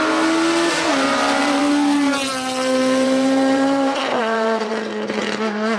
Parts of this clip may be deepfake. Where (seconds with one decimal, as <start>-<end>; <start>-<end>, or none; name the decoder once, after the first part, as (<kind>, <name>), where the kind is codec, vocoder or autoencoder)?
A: 0.9-1.6 (vocoder, BigVGAN v2); 2.3-4.7